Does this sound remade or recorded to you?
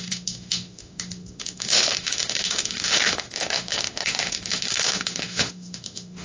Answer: remade